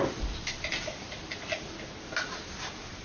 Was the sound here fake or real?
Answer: real